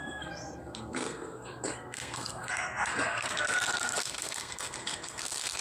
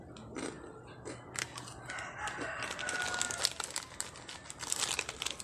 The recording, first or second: second